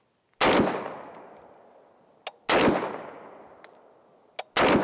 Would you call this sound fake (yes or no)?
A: no